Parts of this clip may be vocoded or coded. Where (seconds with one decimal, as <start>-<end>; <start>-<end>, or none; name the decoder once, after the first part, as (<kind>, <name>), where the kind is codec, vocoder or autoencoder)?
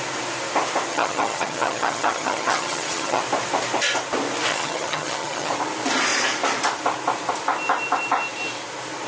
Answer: 0.9-3.2 (vocoder, HiFi-GAN); 4.5-5.5